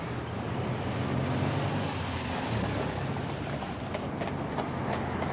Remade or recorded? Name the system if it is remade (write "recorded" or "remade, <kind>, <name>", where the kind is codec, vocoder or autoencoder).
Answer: recorded